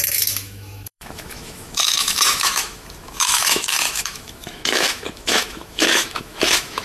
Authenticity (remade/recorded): remade